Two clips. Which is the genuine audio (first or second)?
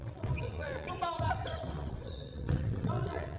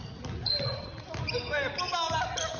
second